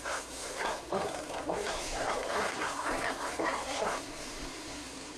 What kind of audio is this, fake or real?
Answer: fake